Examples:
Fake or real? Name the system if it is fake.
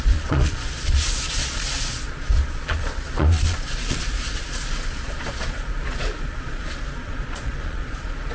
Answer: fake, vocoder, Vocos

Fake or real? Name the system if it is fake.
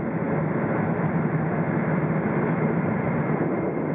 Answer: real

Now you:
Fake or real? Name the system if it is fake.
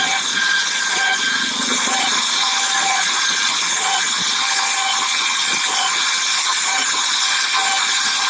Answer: fake, vocoder, Vocos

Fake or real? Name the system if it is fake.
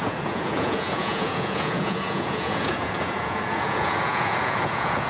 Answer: fake, vocoder, Vocos